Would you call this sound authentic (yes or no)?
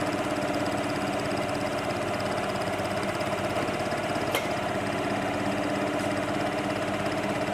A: yes